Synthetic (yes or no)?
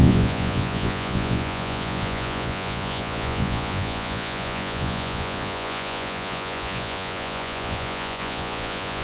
yes